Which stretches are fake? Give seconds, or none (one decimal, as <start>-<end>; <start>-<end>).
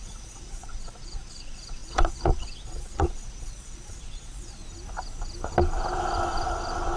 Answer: 0.0-4.6; 6.1-7.0